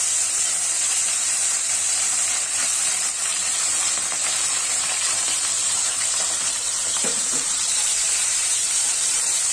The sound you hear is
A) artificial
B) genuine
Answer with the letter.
A